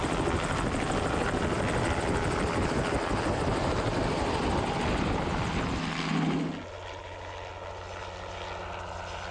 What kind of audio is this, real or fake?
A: real